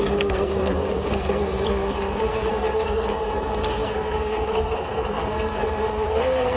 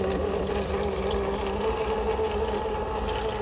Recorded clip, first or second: second